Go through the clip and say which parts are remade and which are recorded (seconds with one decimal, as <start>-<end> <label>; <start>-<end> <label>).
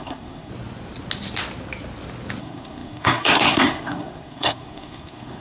0.0-0.5 remade; 0.5-2.4 recorded; 2.4-5.4 remade